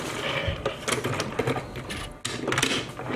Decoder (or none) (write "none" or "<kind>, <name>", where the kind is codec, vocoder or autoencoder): none